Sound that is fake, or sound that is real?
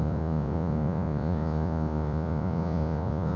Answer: fake